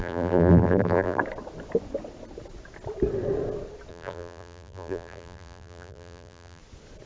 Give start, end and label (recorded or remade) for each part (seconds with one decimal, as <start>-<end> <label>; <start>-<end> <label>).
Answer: 0.0-1.2 remade; 1.2-3.9 recorded; 3.9-6.6 remade; 6.6-7.1 recorded